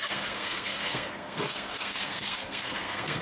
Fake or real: fake